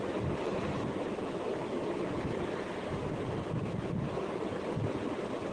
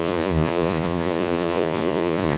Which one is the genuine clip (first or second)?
first